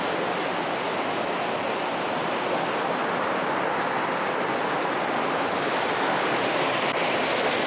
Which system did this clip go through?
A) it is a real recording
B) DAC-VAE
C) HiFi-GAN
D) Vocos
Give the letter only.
A